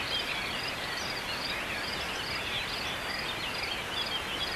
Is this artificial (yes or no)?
no